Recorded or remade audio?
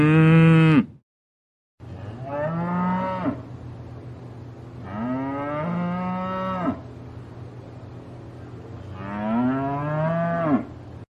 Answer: recorded